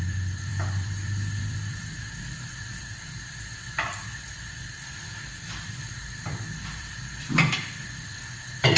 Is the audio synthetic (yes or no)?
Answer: yes